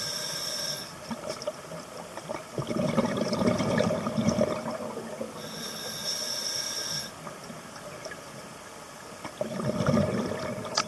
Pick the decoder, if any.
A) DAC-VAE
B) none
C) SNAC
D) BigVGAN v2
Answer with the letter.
B